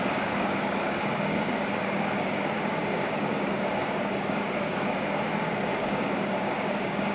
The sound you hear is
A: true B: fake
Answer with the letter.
B